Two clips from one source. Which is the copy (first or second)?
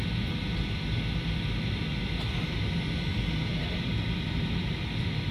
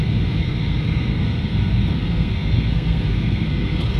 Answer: second